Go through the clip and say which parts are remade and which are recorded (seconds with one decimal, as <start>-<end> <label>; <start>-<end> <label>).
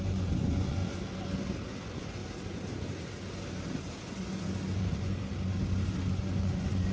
0.0-0.8 remade; 0.8-1.7 recorded; 1.7-2.2 remade; 2.2-4.8 recorded; 4.8-5.3 remade; 5.3-6.2 recorded; 6.2-6.9 remade